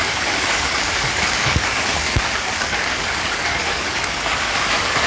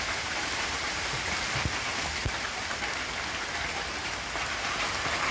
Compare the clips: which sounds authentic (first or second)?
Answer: second